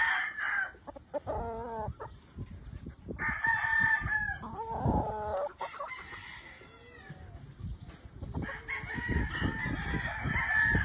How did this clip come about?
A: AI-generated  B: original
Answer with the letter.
B